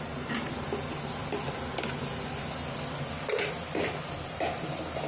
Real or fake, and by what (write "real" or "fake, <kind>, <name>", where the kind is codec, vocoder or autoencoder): real